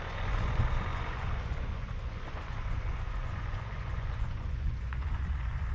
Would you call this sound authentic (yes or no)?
no